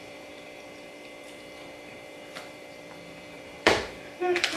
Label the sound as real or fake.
fake